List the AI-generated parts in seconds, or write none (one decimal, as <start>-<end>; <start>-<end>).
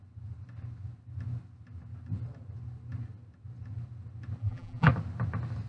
4.4-4.9